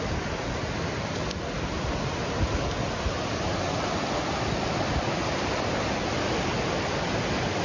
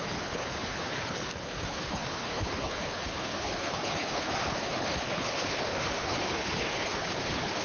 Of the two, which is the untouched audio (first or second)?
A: first